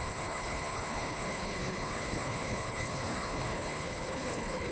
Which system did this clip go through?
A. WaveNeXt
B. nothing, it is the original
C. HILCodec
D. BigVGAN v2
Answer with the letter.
C